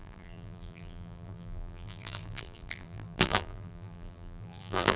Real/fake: fake